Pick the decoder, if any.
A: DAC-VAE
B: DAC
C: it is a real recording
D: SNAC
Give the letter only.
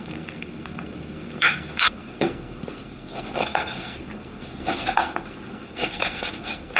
D